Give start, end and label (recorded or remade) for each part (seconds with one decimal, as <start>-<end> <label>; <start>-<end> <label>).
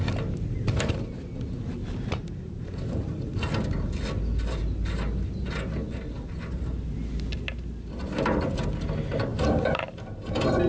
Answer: 0.0-2.2 recorded; 2.2-3.4 remade; 3.4-9.3 recorded; 9.3-10.7 remade